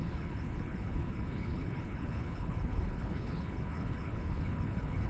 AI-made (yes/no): yes